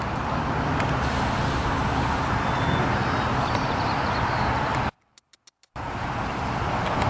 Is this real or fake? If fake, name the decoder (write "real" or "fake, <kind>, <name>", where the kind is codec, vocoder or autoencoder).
fake, vocoder, BigVGAN v2